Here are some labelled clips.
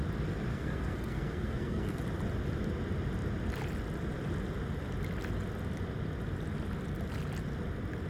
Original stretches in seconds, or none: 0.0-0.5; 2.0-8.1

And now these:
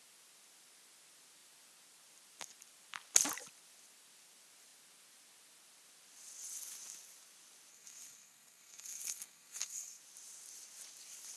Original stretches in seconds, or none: 0.0-7.7; 10.0-11.4

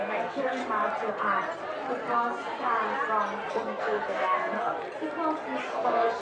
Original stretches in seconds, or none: 0.6-3.5; 4.7-5.7